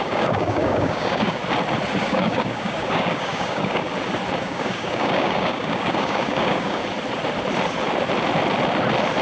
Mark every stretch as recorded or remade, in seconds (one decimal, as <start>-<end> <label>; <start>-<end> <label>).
0.0-1.4 remade; 1.4-2.0 recorded; 2.0-3.9 remade; 3.9-4.4 recorded; 4.4-6.8 remade; 6.8-9.2 recorded